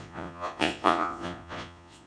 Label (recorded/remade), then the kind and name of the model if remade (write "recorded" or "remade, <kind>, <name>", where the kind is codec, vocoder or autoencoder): remade, vocoder, Vocos